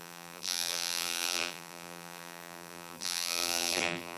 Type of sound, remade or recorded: remade